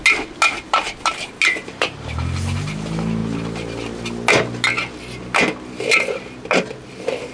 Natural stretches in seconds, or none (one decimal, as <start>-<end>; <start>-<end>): 0.0-7.3